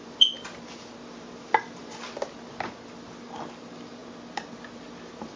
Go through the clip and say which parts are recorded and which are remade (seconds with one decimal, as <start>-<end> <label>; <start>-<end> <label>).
0.0-1.8 recorded; 1.8-2.3 remade; 2.3-4.0 recorded; 4.0-5.4 remade